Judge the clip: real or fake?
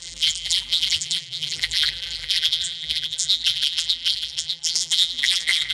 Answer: fake